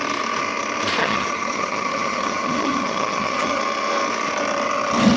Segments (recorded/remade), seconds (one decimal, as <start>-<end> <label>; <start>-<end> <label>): 0.0-1.0 recorded; 1.0-3.6 remade; 3.6-5.2 recorded